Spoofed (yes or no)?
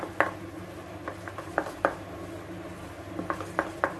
no